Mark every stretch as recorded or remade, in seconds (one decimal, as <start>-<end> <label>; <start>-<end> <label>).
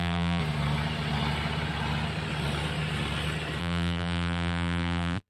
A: 0.0-0.4 remade; 0.4-3.6 recorded; 3.6-5.3 remade